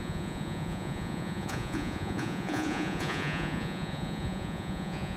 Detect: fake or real fake